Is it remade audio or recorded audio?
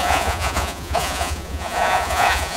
remade